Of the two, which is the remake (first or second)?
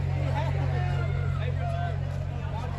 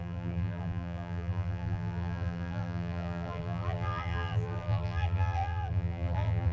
second